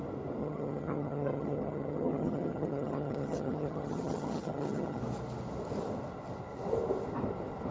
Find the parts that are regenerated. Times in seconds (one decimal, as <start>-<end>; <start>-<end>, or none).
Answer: 0.4-5.0